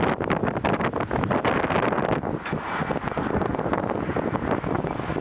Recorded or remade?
recorded